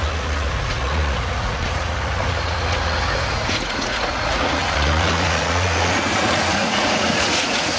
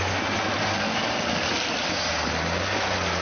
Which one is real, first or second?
second